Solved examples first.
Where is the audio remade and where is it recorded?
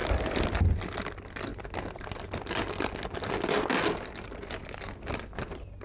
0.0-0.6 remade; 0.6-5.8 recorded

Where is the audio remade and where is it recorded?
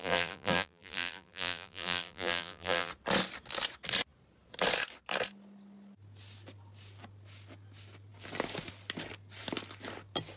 0.0-2.9 remade; 2.9-10.4 recorded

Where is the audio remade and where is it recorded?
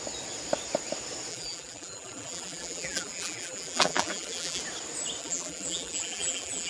0.0-1.3 recorded; 1.3-4.6 remade; 4.6-5.2 recorded; 5.2-6.7 remade